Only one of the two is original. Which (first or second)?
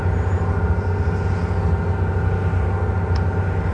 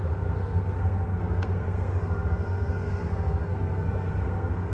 first